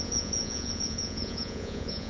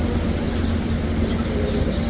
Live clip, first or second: second